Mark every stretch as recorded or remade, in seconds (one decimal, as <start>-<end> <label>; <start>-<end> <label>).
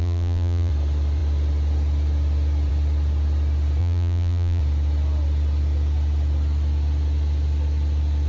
0.0-0.7 remade; 0.7-3.8 recorded; 3.8-4.6 remade; 4.6-8.3 recorded